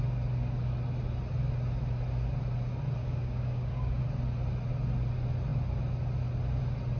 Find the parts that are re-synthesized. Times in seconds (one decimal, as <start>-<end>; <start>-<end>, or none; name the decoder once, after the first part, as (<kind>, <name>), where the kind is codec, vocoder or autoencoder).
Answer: 3.0-4.0 (codec, DAC)